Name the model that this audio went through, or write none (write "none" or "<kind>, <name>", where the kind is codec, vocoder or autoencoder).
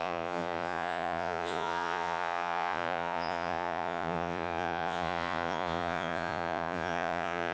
vocoder, Vocos